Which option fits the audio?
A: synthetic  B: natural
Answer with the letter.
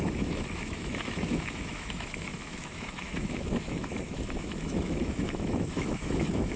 A